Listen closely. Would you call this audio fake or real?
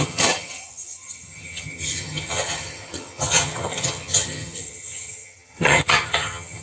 fake